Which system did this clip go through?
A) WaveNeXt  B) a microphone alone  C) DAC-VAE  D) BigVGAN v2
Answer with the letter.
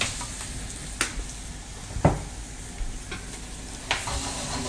B